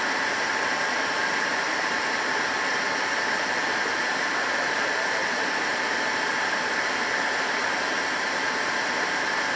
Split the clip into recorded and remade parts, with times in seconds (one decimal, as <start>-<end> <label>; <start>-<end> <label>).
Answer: 0.0-9.6 remade

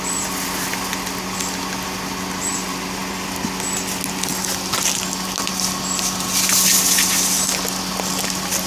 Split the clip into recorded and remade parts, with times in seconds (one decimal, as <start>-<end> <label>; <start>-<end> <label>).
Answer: 0.0-8.7 recorded